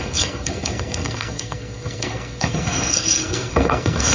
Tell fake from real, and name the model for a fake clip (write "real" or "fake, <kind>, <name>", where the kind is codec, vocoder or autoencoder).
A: fake, codec, SNAC